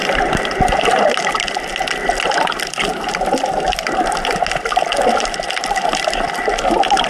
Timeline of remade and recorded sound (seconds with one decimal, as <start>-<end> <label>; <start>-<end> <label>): 0.0-1.3 remade; 1.3-7.1 recorded